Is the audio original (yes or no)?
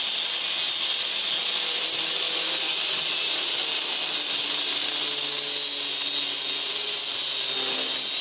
yes